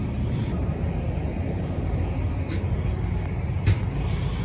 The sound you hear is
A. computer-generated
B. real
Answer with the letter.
B